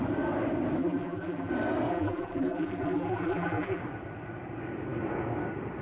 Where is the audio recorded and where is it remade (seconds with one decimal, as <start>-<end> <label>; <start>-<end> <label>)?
0.0-0.8 recorded; 0.8-1.5 remade; 1.5-1.9 recorded; 1.9-3.8 remade; 3.8-5.8 recorded